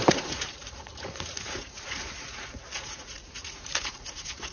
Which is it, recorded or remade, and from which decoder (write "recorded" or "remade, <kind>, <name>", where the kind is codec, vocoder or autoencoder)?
remade, vocoder, Vocos